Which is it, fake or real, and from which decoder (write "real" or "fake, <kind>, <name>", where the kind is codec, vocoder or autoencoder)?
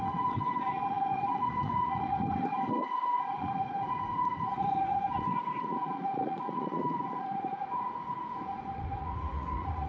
fake, vocoder, Vocos